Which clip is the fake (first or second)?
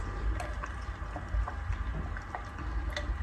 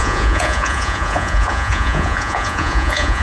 second